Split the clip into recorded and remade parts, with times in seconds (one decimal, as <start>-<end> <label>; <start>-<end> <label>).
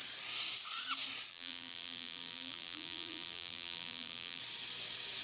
0.0-1.3 recorded; 1.3-4.4 remade; 4.4-5.2 recorded